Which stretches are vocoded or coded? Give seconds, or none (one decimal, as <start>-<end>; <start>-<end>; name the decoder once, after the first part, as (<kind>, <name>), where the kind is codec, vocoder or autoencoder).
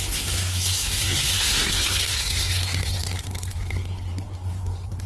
0.0-5.1 (codec, SNAC)